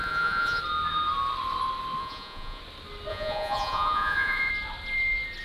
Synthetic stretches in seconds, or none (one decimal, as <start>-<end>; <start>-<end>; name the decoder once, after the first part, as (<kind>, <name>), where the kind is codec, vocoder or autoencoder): 0.0-0.6 (vocoder, Vocos); 2.0-2.6; 3.1-4.5